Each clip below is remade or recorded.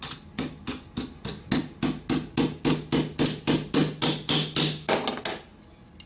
recorded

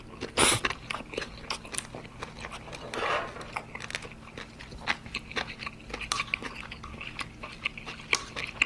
recorded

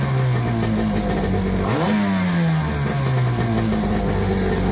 recorded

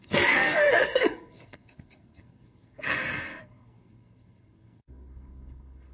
remade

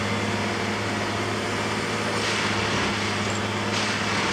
recorded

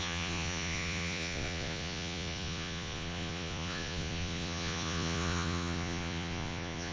remade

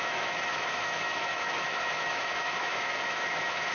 remade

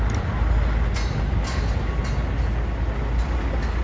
recorded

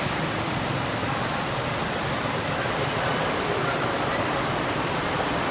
remade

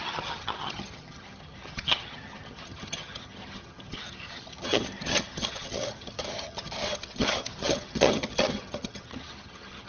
remade